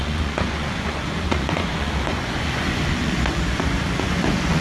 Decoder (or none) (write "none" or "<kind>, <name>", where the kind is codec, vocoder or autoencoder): vocoder, Vocos